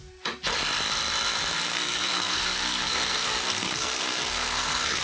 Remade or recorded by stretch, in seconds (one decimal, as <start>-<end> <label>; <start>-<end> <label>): 0.0-1.7 recorded; 1.7-5.0 remade